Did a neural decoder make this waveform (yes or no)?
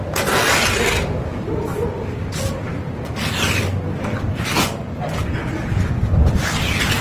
no